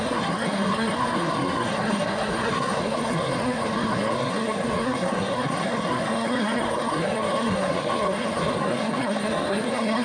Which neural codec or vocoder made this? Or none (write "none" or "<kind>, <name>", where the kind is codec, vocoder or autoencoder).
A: codec, SNAC